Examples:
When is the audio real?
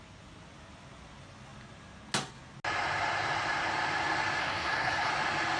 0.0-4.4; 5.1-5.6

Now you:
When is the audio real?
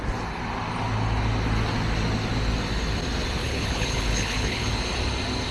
0.0-3.4; 4.7-5.5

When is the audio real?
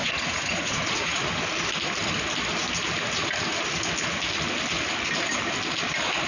1.2-6.3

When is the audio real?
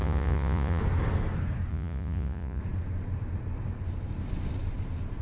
0.8-1.7; 2.6-5.2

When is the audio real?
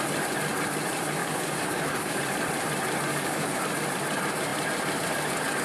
0.0-1.2; 2.2-3.1; 3.6-5.6